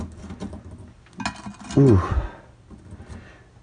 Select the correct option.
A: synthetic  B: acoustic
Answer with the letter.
B